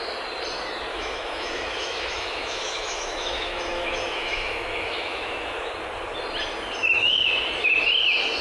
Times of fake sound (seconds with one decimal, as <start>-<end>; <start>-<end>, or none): 0.9-5.7; 6.8-7.5